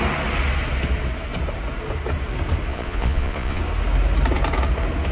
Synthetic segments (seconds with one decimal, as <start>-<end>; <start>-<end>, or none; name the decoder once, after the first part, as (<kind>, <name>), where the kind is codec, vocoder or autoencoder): 2.7-3.6 (vocoder, Vocos)